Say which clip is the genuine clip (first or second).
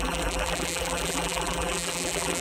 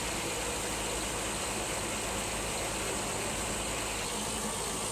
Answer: second